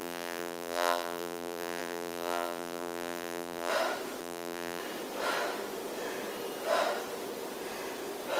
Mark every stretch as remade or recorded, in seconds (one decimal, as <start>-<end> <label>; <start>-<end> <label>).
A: 0.0-3.7 remade; 3.7-4.2 recorded; 4.2-4.8 remade; 4.8-8.4 recorded